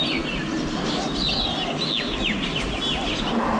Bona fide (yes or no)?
yes